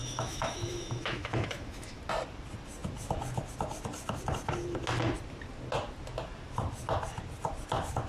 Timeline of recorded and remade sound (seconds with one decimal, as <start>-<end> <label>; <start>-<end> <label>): 0.0-2.0 remade; 2.0-8.1 recorded